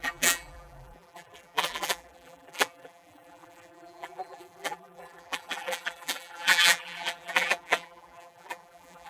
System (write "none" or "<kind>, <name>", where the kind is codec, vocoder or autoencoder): vocoder, BigVGAN v2